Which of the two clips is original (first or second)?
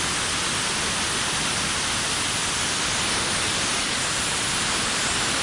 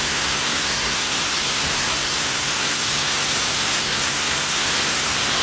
first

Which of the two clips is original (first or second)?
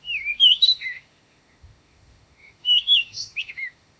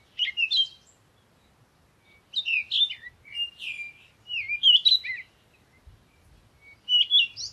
second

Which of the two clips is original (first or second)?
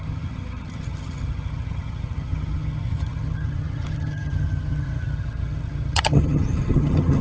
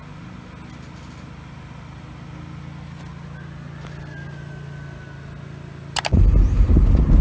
second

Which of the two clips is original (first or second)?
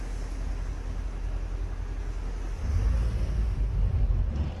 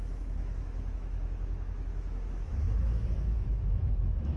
first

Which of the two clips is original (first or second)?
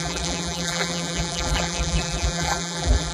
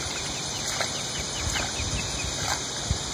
second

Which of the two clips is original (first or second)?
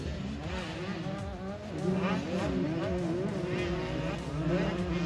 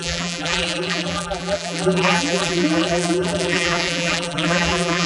first